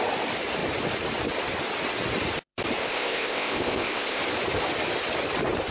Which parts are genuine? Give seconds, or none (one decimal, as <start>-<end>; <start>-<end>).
0.0-2.8; 4.2-5.7

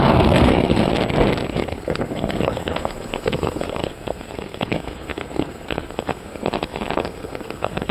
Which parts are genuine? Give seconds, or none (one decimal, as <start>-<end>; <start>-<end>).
0.9-1.5

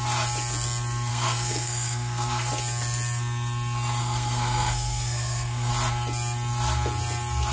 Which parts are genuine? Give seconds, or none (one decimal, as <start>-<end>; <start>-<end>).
0.0-1.1; 2.5-4.0; 5.7-7.5

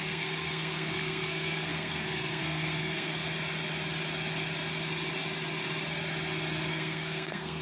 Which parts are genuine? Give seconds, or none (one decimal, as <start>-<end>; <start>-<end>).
3.1-6.7

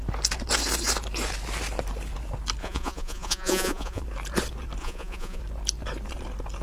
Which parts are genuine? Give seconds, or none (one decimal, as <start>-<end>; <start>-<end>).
0.0-2.6; 4.0-4.8; 5.4-6.6